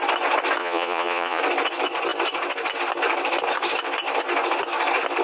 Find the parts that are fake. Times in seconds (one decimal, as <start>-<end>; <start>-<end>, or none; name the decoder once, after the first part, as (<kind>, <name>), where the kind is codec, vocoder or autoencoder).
0.6-1.4 (vocoder, Vocos)